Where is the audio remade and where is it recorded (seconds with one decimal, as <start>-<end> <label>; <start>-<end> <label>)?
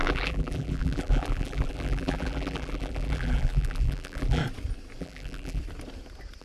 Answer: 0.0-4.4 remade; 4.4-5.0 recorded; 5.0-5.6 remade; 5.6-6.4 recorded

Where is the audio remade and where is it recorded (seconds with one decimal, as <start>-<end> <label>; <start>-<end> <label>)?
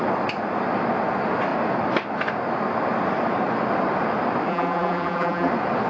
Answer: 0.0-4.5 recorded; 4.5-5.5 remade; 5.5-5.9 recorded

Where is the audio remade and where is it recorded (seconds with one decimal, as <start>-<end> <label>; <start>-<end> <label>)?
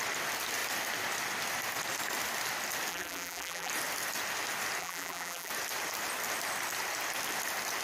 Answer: 0.0-2.9 recorded; 2.9-3.7 remade; 3.7-4.8 recorded; 4.8-5.5 remade; 5.5-7.8 recorded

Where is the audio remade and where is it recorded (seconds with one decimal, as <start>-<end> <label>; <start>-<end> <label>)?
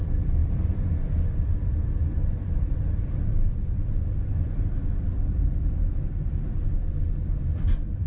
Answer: 0.0-8.1 remade